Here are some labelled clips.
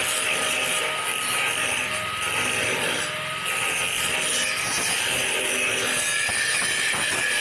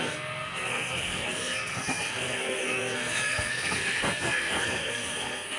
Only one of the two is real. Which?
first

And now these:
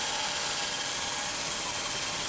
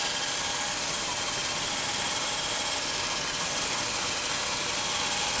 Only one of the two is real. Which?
second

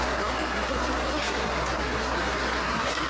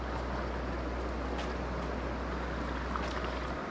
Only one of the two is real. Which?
second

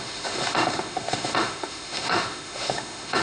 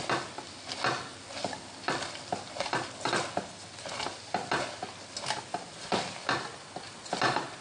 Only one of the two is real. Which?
second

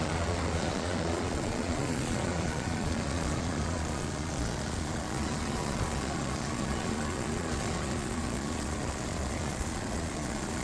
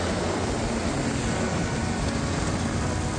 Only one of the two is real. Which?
second